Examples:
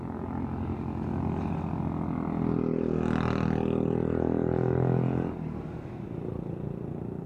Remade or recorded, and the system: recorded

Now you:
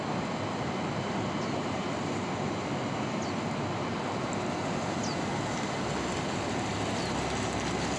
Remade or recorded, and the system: recorded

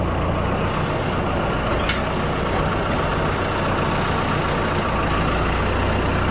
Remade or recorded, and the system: recorded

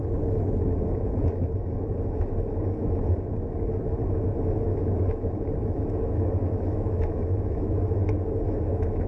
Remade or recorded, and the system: remade, autoencoder, DAC-VAE